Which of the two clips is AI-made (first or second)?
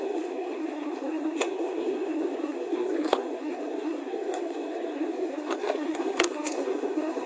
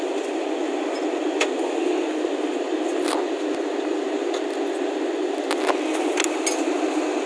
first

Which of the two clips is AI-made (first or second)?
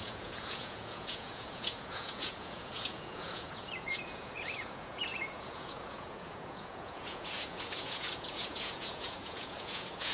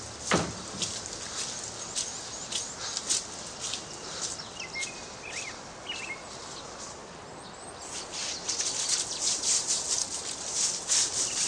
first